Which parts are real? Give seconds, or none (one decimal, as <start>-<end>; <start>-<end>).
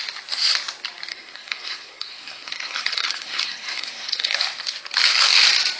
0.0-1.1; 4.4-5.8